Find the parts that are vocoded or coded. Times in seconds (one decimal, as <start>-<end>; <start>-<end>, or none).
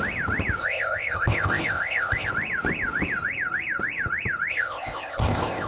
0.6-2.3; 4.5-5.7